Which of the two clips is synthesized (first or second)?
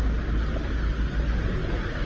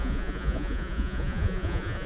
second